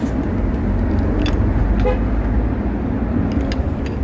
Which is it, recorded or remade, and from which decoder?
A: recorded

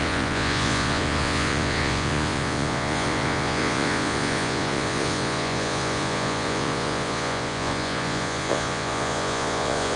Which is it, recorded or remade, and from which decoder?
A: remade, vocoder, Vocos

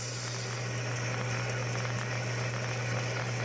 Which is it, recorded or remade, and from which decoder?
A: recorded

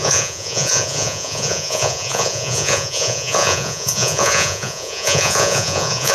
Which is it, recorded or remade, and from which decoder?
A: remade, vocoder, Vocos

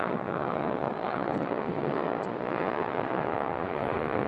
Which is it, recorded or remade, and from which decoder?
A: remade, vocoder, Vocos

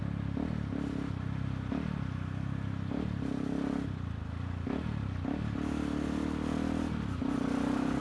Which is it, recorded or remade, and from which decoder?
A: recorded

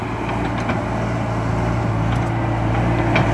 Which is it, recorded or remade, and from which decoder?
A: recorded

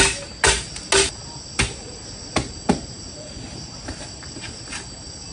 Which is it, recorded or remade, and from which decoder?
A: recorded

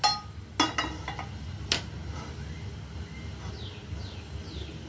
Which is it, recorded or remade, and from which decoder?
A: recorded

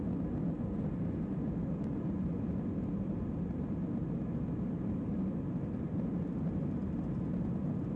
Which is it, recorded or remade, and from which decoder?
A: recorded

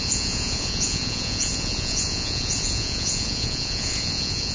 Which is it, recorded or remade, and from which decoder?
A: remade, vocoder, Vocos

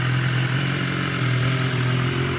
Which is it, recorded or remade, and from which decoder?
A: recorded